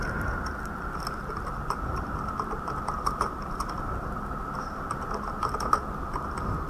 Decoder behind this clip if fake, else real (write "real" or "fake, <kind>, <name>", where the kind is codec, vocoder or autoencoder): real